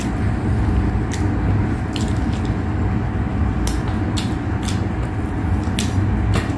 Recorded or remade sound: recorded